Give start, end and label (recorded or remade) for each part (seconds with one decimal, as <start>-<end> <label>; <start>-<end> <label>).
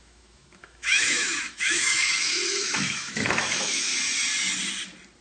0.0-3.9 remade; 3.9-5.2 recorded